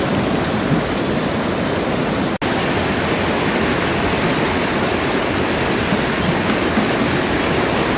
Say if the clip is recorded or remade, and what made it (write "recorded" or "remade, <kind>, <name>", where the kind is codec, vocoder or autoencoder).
recorded